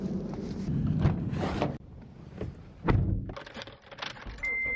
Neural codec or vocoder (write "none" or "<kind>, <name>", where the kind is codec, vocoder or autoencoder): none